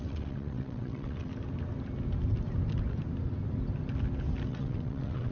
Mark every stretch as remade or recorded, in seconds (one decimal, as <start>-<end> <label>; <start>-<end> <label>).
0.0-1.3 remade; 1.3-4.5 recorded; 4.5-5.3 remade